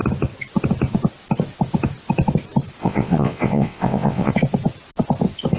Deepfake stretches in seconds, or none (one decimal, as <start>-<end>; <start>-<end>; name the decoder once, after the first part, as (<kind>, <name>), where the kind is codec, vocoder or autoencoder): 2.8-4.3 (vocoder, WaveNeXt)